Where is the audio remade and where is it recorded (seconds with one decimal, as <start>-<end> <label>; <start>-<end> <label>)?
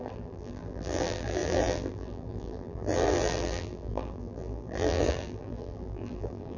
0.0-6.6 remade